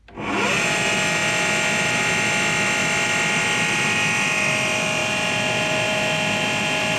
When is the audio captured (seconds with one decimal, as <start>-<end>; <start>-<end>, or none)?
0.0-7.0